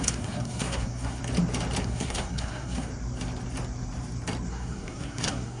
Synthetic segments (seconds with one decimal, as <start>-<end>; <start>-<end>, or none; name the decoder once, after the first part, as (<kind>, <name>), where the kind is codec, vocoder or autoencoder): 0.0-1.2 (codec, SNAC); 1.8-2.9; 4.5-5.6